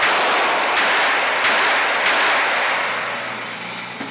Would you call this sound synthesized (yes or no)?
no